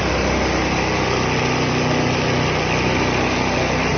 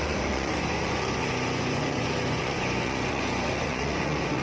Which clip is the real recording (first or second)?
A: first